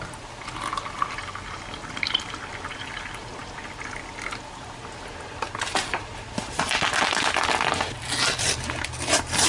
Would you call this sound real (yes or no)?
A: yes